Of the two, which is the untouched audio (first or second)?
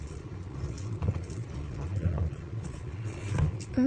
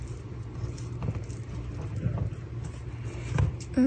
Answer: second